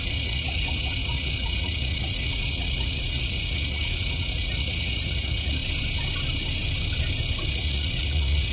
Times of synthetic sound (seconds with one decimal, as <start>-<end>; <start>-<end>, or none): 0.0-5.6; 7.5-8.5